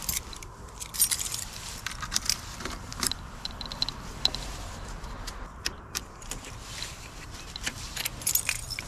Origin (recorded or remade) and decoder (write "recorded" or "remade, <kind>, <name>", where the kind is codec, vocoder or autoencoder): remade, vocoder, BigVGAN v2